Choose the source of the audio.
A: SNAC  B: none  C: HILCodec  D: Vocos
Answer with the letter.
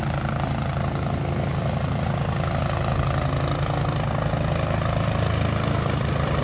B